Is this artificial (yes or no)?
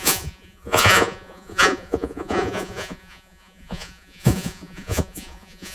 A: yes